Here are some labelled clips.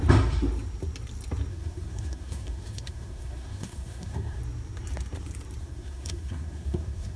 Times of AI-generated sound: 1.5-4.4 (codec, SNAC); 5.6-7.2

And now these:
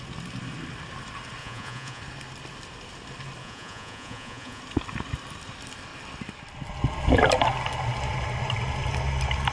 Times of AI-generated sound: 1.4-2.0 (vocoder, Vocos); 3.4-4.6